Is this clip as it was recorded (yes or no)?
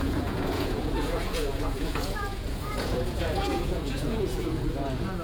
no